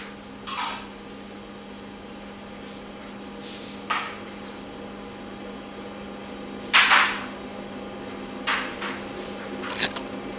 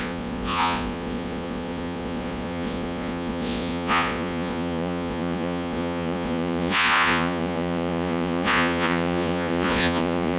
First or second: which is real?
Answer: first